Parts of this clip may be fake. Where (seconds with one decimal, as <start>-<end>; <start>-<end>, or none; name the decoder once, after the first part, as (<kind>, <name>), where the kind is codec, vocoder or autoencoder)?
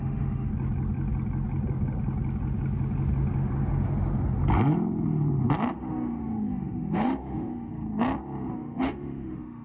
0.0-0.5 (autoencoder, DAC-VAE); 5.7-7.7; 8.5-9.6